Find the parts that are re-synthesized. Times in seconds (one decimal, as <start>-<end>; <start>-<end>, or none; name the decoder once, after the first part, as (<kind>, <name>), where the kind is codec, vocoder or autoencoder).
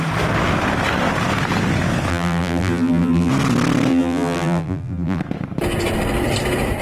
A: 2.1-3.3 (vocoder, BigVGAN v2); 3.9-5.2